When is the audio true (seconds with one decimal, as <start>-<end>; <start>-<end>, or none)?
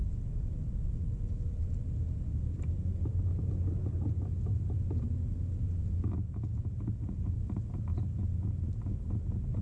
0.0-9.6